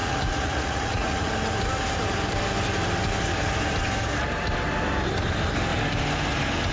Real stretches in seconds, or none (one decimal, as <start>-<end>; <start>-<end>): 1.3-6.7